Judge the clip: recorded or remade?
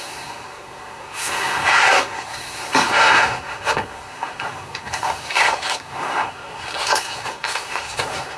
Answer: remade